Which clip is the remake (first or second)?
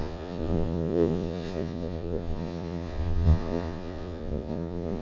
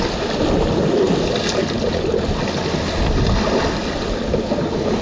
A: first